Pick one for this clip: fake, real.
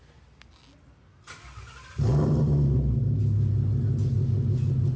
real